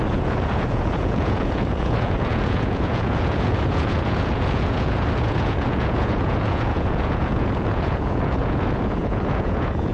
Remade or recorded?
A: remade